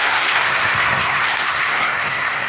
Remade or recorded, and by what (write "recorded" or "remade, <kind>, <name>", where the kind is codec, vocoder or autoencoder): remade, codec, SNAC